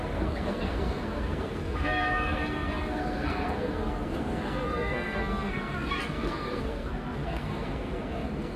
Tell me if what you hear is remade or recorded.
remade